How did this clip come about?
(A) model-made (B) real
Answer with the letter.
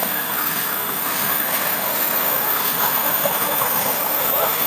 A